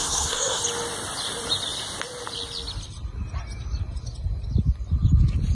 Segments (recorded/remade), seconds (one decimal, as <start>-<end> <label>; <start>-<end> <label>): 0.0-0.6 remade; 0.6-5.5 recorded